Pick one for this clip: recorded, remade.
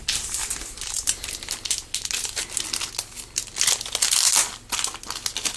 recorded